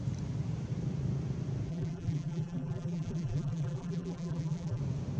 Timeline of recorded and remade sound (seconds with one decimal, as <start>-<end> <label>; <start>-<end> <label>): 0.0-1.7 recorded; 1.7-4.8 remade; 4.8-5.2 recorded

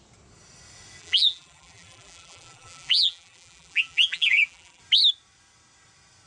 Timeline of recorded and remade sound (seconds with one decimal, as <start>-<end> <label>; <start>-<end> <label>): 0.0-1.0 recorded; 1.0-4.8 remade; 4.8-6.3 recorded

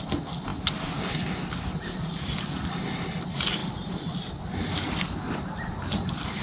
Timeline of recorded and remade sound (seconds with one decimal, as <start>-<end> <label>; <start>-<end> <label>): 0.0-6.4 recorded